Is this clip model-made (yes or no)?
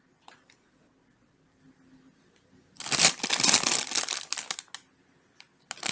no